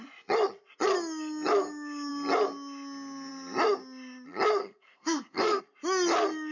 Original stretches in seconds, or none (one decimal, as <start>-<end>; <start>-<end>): 0.0-4.6; 5.6-6.5